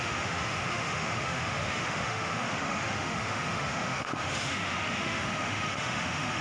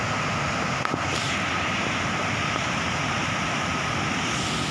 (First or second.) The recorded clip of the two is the second